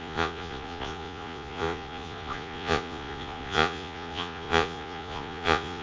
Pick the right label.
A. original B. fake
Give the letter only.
B